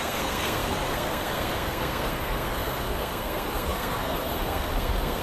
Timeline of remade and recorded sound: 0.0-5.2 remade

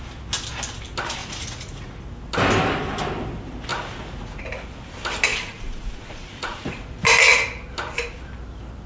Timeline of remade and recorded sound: 0.0-1.2 recorded; 1.2-2.0 remade; 2.0-3.7 recorded; 3.7-4.4 remade; 4.4-5.3 recorded; 5.3-6.8 remade; 6.8-8.9 recorded

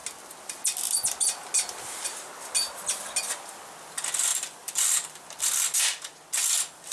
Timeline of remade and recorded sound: 0.0-6.9 recorded

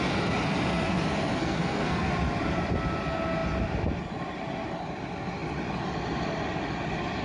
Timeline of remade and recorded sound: 0.0-1.4 recorded; 1.4-2.1 remade; 2.1-7.2 recorded

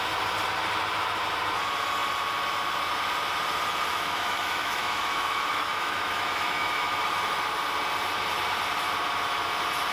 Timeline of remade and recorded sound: 0.0-3.9 recorded; 3.9-7.0 remade; 7.0-9.9 recorded

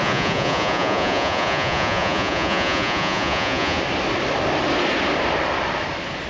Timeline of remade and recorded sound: 0.0-3.8 remade; 3.8-6.3 recorded

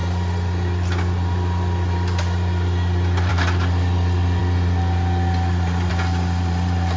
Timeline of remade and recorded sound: 0.0-7.0 recorded

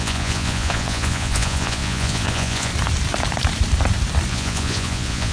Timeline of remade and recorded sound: 0.0-2.7 remade; 2.7-4.3 recorded; 4.3-5.3 remade